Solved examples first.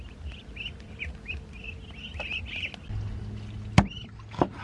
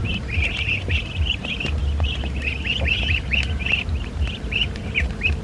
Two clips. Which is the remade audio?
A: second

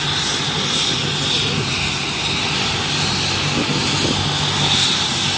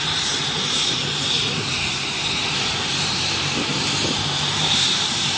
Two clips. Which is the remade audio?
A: second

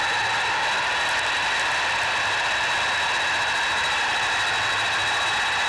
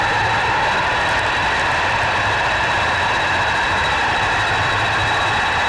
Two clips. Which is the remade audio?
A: second